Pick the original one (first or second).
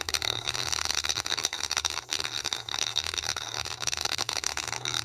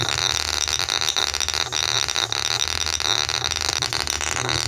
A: second